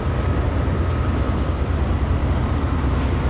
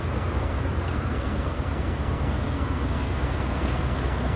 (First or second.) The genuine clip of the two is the first